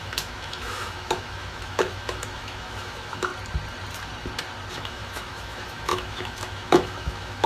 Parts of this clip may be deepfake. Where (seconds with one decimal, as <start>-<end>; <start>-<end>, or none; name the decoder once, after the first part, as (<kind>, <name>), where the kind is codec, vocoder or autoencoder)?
0.0-3.3 (autoencoder, DAC-VAE); 4.7-7.5